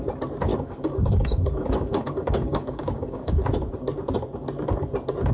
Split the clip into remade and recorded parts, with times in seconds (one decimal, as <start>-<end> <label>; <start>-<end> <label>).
0.0-0.5 recorded; 0.5-3.4 remade; 3.4-5.3 recorded